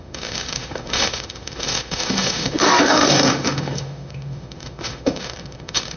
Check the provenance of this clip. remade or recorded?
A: remade